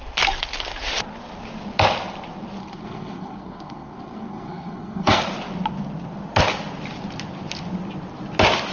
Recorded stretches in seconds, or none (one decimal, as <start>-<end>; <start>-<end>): 0.0-2.6; 5.2-8.7